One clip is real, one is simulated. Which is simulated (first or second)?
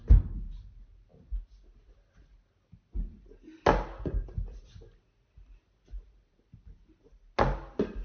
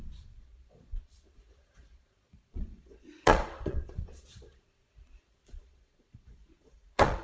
second